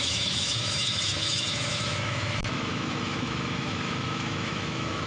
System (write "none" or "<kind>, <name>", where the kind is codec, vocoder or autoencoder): autoencoder, DAC-VAE